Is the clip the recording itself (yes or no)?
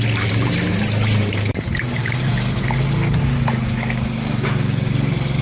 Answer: yes